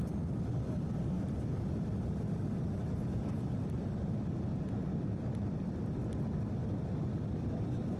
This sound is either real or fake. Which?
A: real